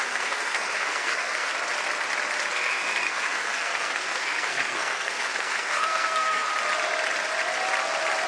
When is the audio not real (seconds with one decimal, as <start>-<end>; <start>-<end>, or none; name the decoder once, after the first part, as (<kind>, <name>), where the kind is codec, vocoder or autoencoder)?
0.0-1.5 (codec, SNAC); 2.5-6.5